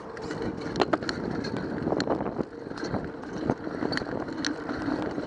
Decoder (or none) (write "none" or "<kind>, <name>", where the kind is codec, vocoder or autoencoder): none